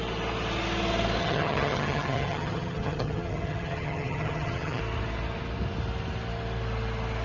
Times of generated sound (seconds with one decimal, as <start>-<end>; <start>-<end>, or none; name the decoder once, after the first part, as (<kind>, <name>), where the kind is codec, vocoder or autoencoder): 1.2-4.8 (vocoder, HiFi-GAN)